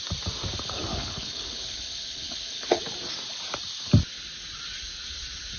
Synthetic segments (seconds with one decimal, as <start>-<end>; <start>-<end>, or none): 0.9-2.8